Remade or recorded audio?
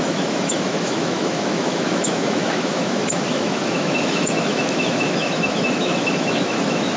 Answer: remade